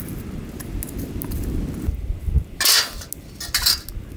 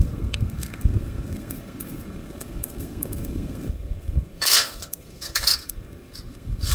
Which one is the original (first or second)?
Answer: first